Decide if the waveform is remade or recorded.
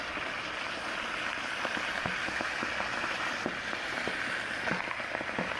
remade